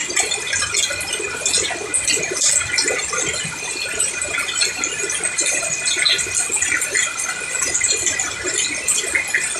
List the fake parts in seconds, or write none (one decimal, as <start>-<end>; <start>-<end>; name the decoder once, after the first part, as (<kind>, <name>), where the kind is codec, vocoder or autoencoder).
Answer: none